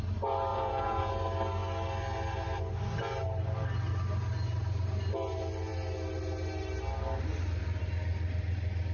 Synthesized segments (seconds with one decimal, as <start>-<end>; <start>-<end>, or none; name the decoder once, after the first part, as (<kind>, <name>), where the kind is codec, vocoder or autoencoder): 0.5-1.1 (vocoder, Vocos)